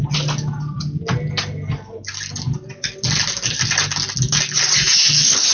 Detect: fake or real real